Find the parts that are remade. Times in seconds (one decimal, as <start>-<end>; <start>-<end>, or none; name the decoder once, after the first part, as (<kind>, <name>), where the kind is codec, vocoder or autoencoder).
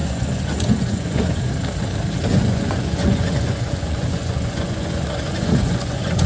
0.0-1.5 (vocoder, Vocos); 2.3-6.3